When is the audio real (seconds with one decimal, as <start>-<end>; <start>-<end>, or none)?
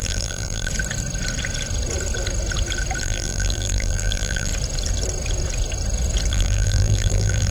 0.7-3.0; 4.5-6.3